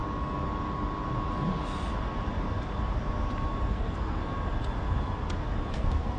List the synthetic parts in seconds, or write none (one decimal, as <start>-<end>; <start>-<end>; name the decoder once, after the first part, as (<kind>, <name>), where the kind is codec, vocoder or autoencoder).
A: 3.7-4.2 (codec, SNAC); 5.7-6.2